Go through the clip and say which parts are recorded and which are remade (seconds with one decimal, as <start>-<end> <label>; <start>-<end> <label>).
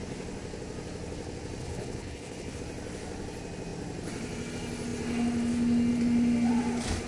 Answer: 0.0-1.6 recorded; 1.6-2.6 remade; 2.6-7.1 recorded